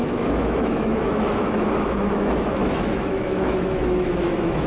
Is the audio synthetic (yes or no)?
yes